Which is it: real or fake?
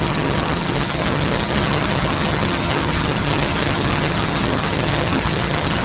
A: fake